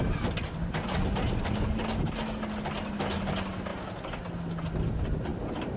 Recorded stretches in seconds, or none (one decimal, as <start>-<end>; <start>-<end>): 0.0-5.8